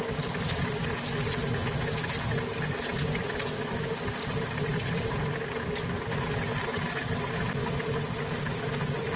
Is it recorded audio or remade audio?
recorded